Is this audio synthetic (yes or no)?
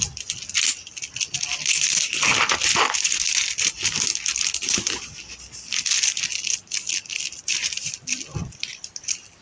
no